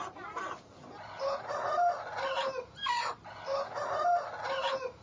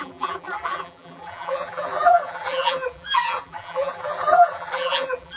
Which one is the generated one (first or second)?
second